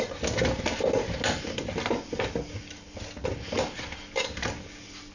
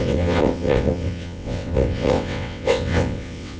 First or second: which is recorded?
first